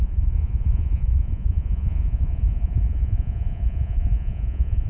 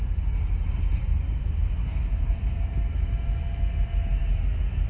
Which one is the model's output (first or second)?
first